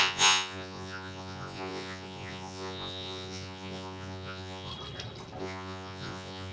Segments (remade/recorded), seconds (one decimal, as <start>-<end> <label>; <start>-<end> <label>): 0.0-4.7 remade; 4.7-5.4 recorded; 5.4-6.5 remade